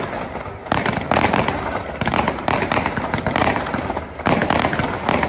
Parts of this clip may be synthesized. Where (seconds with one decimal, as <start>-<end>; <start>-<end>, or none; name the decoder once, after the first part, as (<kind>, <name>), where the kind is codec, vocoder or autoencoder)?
0.6-3.8 (vocoder, BigVGAN v2)